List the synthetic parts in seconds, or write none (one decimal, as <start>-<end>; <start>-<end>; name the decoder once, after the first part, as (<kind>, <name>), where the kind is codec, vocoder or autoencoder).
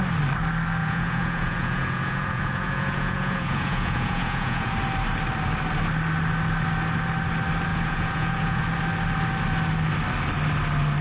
0.8-4.7 (vocoder, Vocos); 7.7-8.6